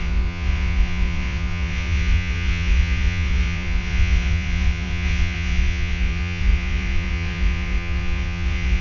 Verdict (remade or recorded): remade